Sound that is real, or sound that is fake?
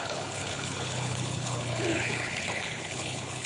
fake